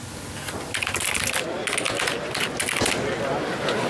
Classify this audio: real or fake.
real